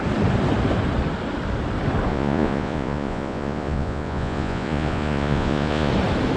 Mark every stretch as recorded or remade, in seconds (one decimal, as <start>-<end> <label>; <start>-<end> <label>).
0.0-2.1 recorded; 2.1-5.9 remade; 5.9-6.4 recorded